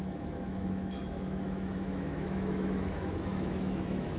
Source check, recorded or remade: remade